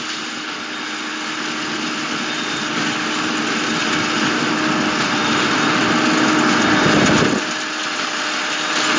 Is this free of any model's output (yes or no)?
yes